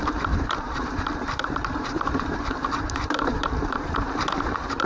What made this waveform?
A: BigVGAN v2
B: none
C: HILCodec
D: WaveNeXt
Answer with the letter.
A